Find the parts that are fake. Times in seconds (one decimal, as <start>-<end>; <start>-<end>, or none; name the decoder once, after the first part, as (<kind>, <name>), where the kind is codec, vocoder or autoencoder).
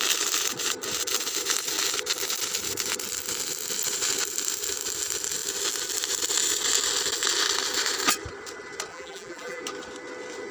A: 8.9-9.6 (vocoder, BigVGAN v2)